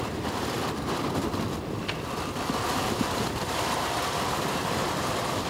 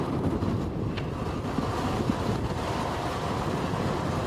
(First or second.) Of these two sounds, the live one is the second